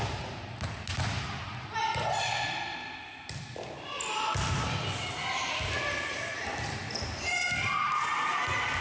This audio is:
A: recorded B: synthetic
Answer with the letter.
A